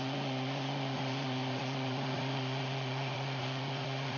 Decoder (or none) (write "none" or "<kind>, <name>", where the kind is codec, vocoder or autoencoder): vocoder, Vocos